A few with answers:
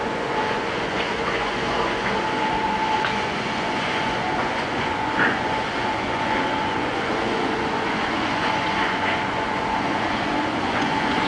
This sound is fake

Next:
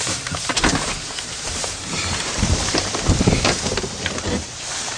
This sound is fake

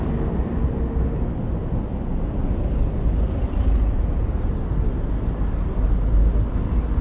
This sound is real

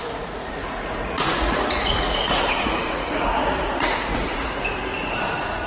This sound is fake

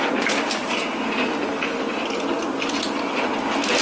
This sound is real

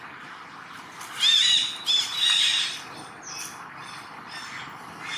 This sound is real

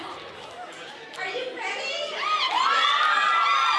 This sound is real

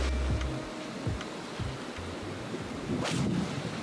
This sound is real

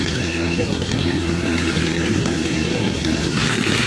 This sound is fake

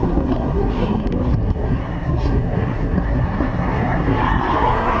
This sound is fake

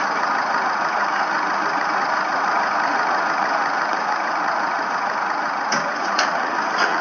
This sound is fake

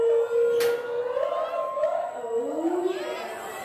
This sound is real